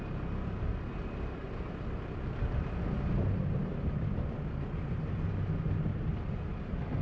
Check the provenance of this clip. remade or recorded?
recorded